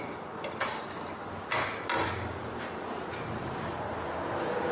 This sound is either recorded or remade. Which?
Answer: recorded